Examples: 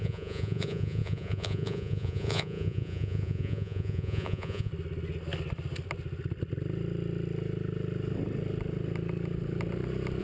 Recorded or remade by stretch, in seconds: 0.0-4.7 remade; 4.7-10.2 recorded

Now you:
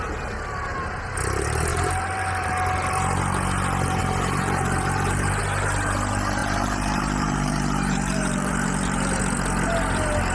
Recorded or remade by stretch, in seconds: 0.0-1.7 recorded; 1.7-2.5 remade; 2.5-4.0 recorded; 4.0-5.4 remade; 5.4-6.4 recorded; 6.4-9.2 remade; 9.2-10.3 recorded

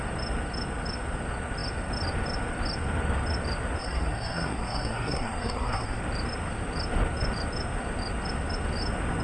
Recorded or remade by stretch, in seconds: 0.0-3.8 recorded; 3.8-6.0 remade; 6.0-9.2 recorded

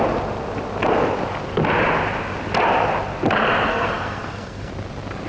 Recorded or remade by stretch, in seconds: 0.0-3.7 recorded; 3.7-4.7 remade; 4.7-5.3 recorded

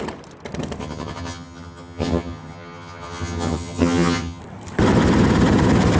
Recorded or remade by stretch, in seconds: 0.0-0.8 recorded; 0.8-4.4 remade; 4.4-6.0 recorded

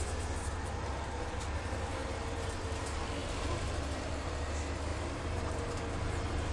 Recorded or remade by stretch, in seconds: 0.0-2.0 recorded; 2.0-2.5 remade; 2.5-3.2 recorded; 3.2-4.3 remade; 4.3-4.9 recorded; 4.9-5.8 remade; 5.8-6.5 recorded